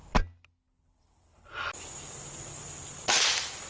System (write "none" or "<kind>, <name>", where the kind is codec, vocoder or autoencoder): none